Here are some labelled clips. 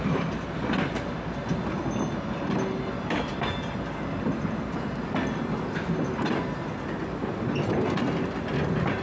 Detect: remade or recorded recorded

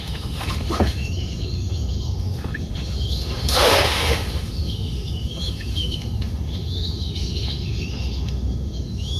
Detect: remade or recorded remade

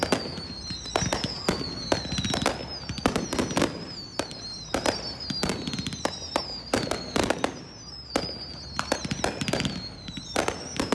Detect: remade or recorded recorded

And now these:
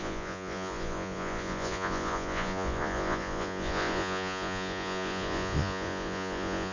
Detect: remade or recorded remade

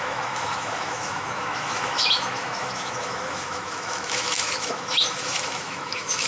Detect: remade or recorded remade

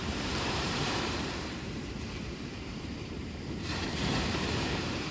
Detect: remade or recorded remade